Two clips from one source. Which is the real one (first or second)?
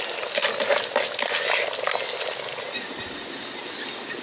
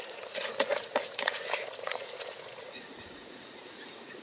first